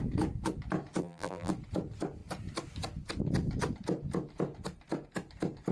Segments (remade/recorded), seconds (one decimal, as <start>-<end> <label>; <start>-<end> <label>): 0.0-1.0 recorded; 1.0-1.5 remade; 1.5-5.7 recorded